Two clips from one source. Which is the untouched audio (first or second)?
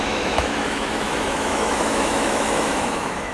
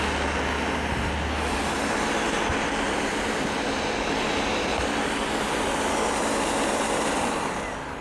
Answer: second